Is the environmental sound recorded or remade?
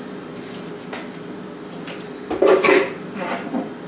recorded